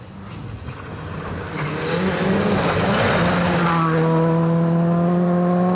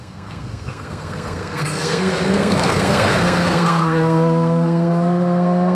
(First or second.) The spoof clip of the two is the second